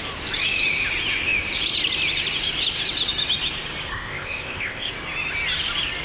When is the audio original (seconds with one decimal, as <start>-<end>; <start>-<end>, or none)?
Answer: 0.0-3.9; 4.9-6.0